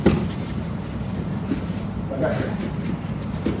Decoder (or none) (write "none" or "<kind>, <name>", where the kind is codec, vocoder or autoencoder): vocoder, BigVGAN v2